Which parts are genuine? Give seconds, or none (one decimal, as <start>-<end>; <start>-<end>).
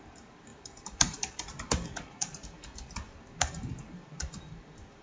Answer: none